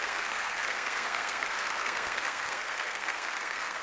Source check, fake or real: fake